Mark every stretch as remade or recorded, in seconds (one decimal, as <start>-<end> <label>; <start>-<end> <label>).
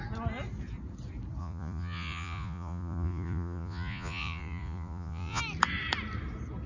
0.0-1.4 recorded; 1.4-5.4 remade; 5.4-6.7 recorded